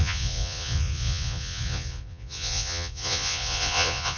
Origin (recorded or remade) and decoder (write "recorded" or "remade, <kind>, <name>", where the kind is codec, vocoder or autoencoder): remade, vocoder, Vocos